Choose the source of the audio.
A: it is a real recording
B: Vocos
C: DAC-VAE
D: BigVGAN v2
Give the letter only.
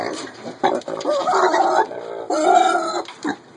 D